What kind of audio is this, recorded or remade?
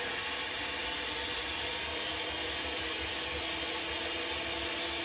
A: recorded